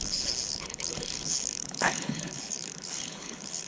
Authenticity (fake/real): fake